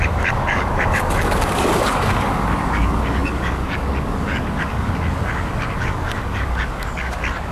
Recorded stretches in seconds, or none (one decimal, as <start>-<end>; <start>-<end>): none